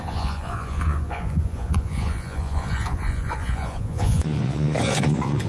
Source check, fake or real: fake